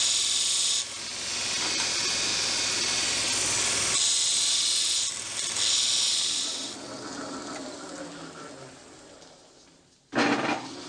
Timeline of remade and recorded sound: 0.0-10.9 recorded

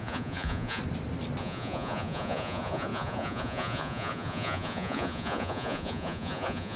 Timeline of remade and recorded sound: 0.0-0.8 remade; 0.8-1.4 recorded; 1.4-6.8 remade

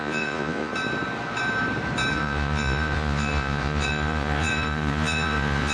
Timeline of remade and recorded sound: 0.0-0.7 remade; 0.7-2.1 recorded; 2.1-5.7 remade

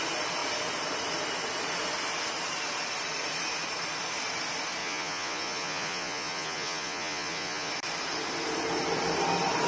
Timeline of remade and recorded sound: 0.0-4.8 recorded; 4.8-7.7 remade; 7.7-9.7 recorded